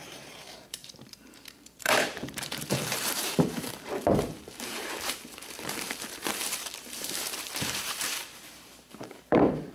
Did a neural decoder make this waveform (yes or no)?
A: yes